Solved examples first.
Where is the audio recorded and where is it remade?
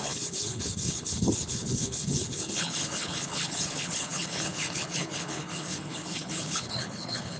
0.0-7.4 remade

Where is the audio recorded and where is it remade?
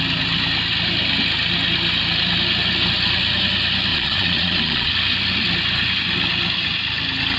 0.0-3.9 recorded; 3.9-4.9 remade; 4.9-7.4 recorded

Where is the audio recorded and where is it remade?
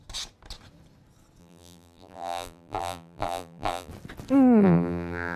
0.0-1.4 recorded; 1.4-3.9 remade; 3.9-4.6 recorded; 4.6-5.4 remade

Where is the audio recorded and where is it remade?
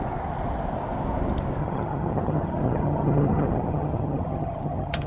0.0-1.6 recorded; 1.6-5.1 remade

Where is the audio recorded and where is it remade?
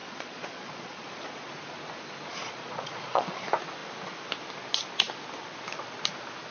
0.0-1.5 remade; 1.5-2.4 recorded; 2.4-3.4 remade; 3.4-6.5 recorded